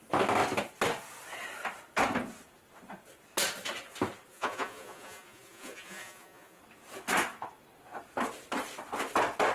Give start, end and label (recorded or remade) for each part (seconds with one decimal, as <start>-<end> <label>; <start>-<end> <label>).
0.0-4.3 recorded; 4.3-6.6 remade; 6.6-9.5 recorded